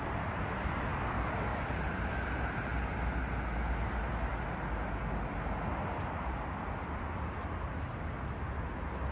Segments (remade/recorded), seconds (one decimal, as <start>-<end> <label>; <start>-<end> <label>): 0.0-2.7 remade; 2.7-6.0 recorded; 6.0-9.1 remade